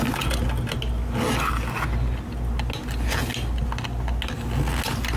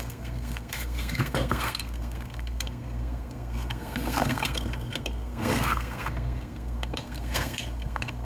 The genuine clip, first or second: first